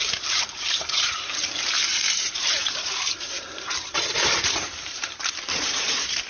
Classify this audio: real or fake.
fake